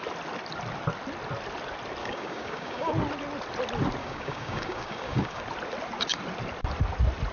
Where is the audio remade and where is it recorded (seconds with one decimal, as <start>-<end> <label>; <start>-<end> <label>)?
0.0-2.0 recorded; 2.0-2.9 remade; 2.9-4.0 recorded; 4.0-5.4 remade; 5.4-7.3 recorded